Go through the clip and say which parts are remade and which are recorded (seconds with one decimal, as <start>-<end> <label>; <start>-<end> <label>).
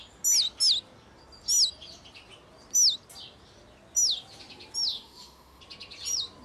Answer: 0.0-4.9 recorded; 4.9-5.6 remade; 5.6-6.4 recorded